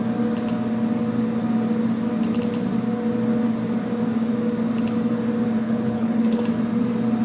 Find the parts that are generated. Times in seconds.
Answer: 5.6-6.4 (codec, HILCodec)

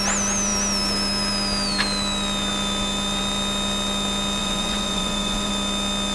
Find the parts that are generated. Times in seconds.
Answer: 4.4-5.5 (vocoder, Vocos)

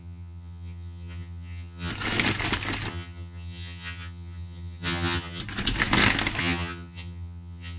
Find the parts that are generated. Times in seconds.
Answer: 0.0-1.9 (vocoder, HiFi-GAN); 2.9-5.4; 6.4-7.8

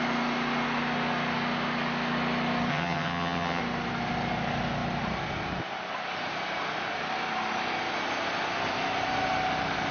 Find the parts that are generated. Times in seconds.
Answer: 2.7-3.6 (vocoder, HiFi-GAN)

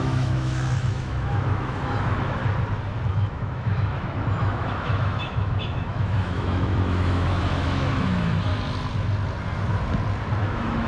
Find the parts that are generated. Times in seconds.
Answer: 0.0-2.4 (autoencoder, DAC-VAE); 3.1-8.5; 10.4-10.9